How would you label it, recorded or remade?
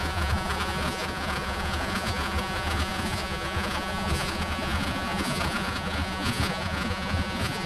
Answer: remade